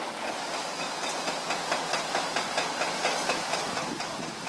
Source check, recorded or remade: recorded